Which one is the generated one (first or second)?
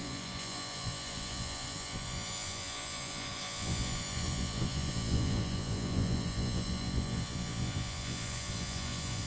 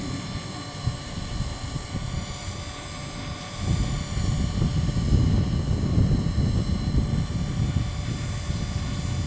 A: first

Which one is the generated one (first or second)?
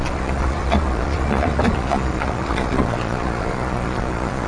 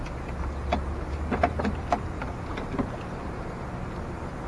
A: first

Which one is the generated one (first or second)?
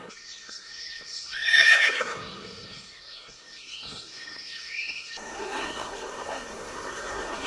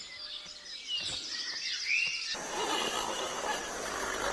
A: first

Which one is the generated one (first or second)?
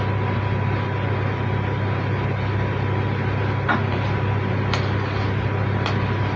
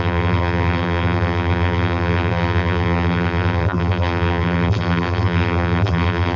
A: second